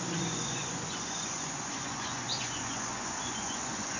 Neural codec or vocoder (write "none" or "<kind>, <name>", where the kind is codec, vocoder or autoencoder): vocoder, Vocos